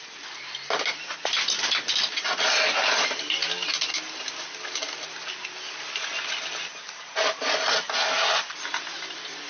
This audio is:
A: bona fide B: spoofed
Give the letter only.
A